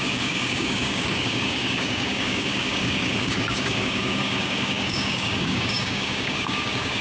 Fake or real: fake